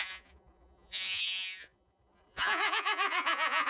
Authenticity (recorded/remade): remade